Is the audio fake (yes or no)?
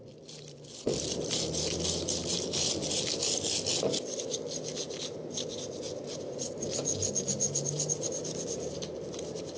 no